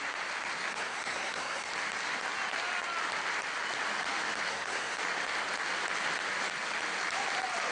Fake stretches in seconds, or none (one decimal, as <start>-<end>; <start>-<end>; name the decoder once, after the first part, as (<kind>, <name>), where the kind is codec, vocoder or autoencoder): 0.7-1.7 (codec, SNAC); 4.5-5.0